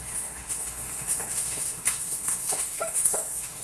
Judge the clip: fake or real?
fake